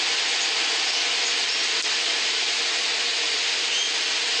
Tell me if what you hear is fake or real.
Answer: real